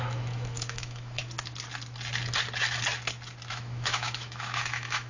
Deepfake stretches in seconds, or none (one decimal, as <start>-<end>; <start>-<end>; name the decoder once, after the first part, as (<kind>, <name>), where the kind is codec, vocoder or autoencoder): 0.0-1.2 (autoencoder, DAC-VAE); 3.5-5.1